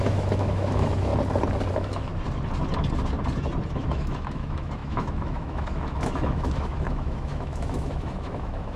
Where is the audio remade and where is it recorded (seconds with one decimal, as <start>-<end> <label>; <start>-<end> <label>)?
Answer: 0.0-1.1 remade; 1.1-1.7 recorded; 1.7-2.1 remade; 2.1-3.7 recorded; 3.7-8.8 remade